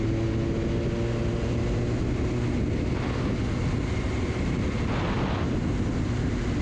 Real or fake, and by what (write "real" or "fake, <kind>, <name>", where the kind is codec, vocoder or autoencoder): real